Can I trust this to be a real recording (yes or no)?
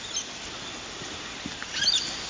yes